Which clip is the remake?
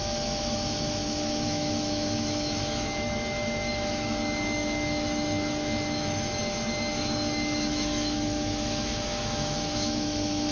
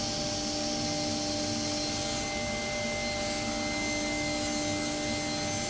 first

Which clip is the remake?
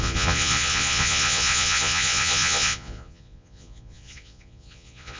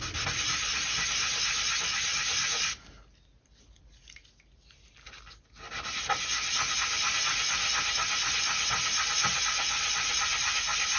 first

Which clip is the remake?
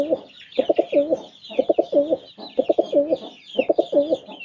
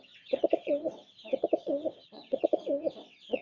second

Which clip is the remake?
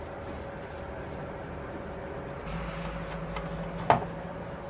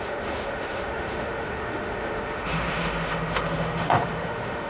second